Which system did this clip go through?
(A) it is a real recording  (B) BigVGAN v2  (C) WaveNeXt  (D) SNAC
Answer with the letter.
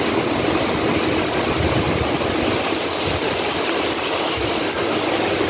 A